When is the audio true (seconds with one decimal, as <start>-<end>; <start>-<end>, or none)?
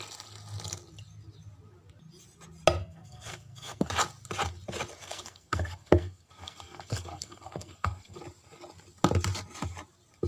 0.0-2.8; 3.9-5.0; 8.2-10.3